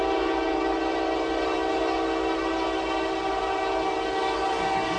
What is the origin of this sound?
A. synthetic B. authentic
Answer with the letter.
B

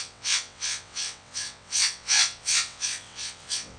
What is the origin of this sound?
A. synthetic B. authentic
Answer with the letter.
A